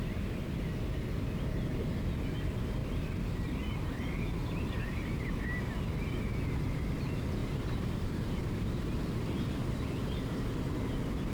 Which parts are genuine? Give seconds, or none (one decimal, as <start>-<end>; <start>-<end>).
0.0-2.8; 4.0-7.4; 8.8-11.3